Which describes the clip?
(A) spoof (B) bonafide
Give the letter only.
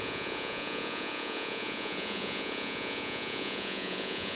A